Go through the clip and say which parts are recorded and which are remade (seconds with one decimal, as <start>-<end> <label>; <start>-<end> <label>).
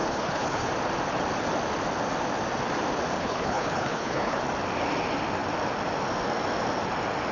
0.0-0.7 remade; 0.7-3.2 recorded; 3.2-4.4 remade; 4.4-7.3 recorded